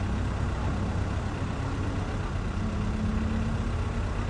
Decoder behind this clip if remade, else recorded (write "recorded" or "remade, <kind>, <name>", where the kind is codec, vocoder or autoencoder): recorded